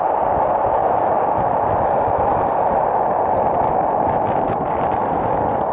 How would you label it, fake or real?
real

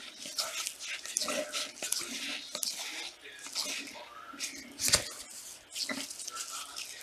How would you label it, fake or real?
real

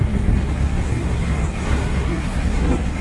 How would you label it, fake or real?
fake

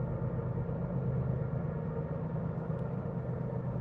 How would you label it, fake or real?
real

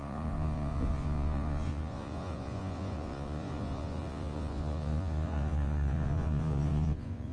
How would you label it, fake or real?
fake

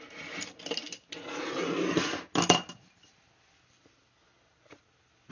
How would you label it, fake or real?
real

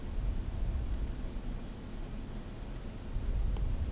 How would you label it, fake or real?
real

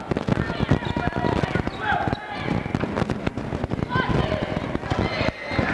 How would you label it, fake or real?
real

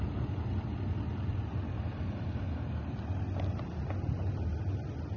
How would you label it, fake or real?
real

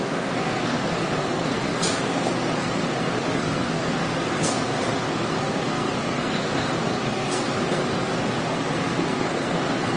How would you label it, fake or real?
fake